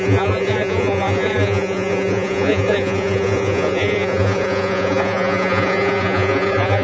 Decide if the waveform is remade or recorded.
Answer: remade